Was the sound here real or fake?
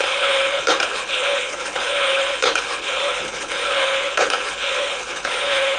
fake